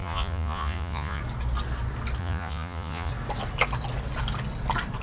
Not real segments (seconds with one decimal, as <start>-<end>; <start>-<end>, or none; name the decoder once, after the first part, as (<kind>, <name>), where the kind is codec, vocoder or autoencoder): 0.0-1.2 (vocoder, Vocos); 2.2-3.1